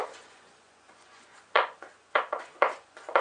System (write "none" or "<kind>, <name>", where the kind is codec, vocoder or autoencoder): vocoder, Vocos